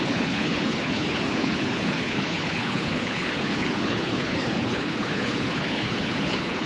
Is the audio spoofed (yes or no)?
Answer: yes